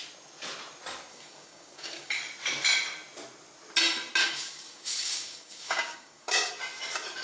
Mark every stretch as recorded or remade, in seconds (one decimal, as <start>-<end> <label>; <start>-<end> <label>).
0.0-1.1 recorded; 1.1-2.2 remade; 2.2-4.2 recorded; 4.2-6.5 remade; 6.5-7.2 recorded